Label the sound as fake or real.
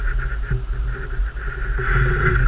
real